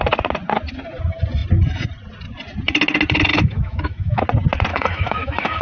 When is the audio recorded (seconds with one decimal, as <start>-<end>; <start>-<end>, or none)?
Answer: 0.0-3.3; 4.2-4.7